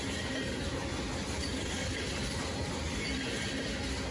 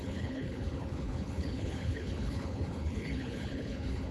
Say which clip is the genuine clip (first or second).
first